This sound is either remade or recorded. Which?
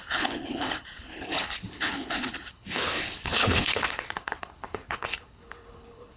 remade